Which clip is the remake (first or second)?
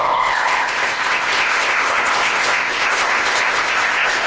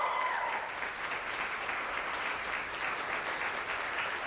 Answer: first